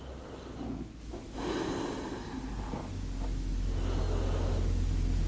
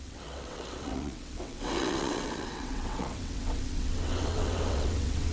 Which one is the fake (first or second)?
second